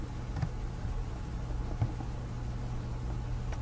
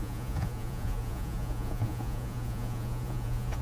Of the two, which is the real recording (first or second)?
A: first